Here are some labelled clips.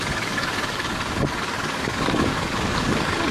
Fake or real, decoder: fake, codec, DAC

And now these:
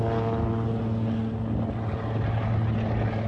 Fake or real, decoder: real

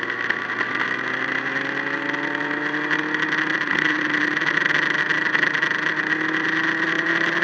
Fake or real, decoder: real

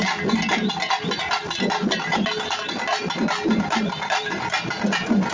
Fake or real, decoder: real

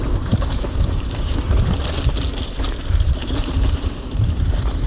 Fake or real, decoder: fake, vocoder, BigVGAN v2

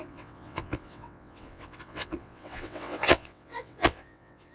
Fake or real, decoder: fake, vocoder, WaveNeXt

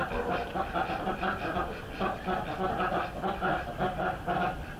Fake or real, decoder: real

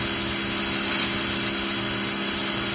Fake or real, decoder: real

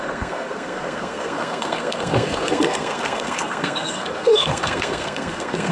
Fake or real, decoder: fake, codec, SNAC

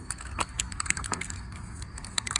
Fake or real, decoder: fake, codec, SNAC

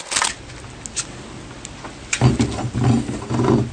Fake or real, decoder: real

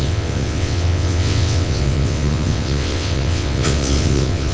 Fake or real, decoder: fake, vocoder, WaveNeXt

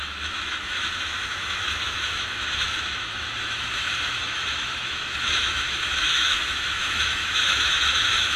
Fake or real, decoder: fake, autoencoder, DAC-VAE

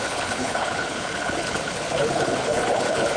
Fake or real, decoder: fake, codec, HILCodec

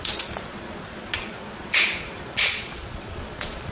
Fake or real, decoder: fake, vocoder, Vocos